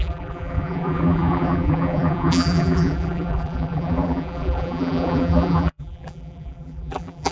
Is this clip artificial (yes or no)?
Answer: yes